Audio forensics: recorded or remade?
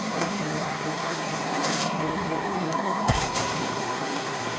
remade